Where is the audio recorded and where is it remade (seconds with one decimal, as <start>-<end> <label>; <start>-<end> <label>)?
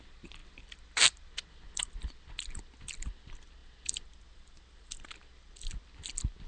0.0-6.5 recorded